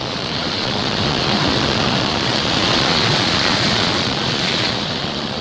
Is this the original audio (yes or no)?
no